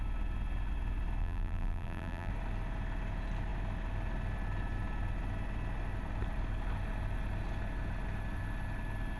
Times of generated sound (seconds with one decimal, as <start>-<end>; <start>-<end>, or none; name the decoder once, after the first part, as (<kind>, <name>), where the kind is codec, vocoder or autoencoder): 1.2-2.3 (vocoder, BigVGAN v2)